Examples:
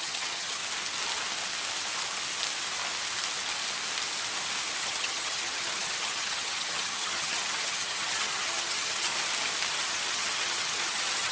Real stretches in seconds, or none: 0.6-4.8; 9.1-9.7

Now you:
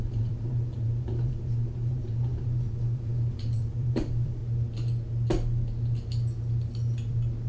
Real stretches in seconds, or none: 4.4-7.5

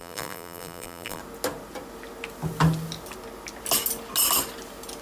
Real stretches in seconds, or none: 1.2-5.0

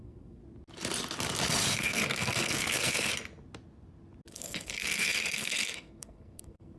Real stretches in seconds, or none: 0.4-1.7; 3.1-4.3

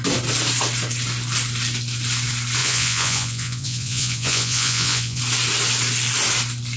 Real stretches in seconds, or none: 0.0-2.6; 5.2-6.8

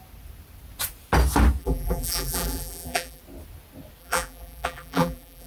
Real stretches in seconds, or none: 0.0-1.6; 3.2-4.0

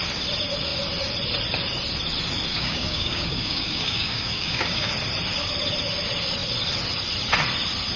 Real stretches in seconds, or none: 0.0-2.5; 4.9-8.0

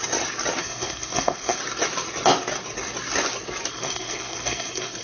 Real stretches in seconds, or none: 0.0-0.6; 1.6-3.7